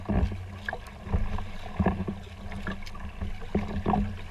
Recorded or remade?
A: recorded